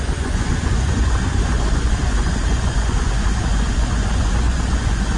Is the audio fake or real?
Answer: fake